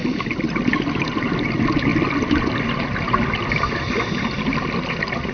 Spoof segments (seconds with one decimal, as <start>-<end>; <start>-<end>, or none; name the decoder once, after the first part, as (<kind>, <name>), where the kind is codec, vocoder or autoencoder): none